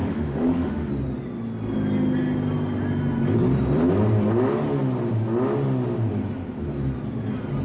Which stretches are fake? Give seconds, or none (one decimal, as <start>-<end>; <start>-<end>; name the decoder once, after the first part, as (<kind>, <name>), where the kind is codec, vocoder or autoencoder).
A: 0.0-0.9 (autoencoder, DAC-VAE)